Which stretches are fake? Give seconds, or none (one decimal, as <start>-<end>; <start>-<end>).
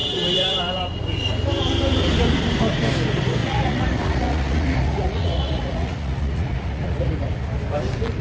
3.4-7.1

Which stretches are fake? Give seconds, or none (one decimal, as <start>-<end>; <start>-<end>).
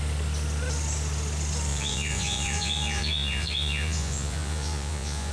1.7-5.3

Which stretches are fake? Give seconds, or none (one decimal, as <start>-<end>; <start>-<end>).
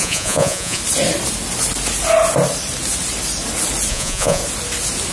0.0-0.8; 3.9-4.4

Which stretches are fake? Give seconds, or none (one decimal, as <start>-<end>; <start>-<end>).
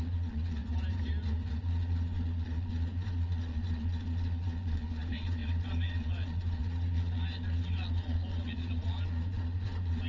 0.0-0.6; 1.6-10.1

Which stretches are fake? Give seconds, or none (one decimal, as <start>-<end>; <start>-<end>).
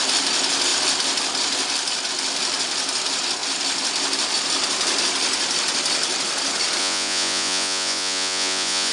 6.8-8.9